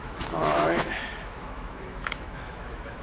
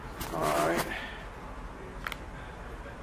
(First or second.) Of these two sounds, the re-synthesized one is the first